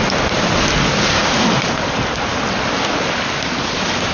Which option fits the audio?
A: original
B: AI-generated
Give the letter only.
A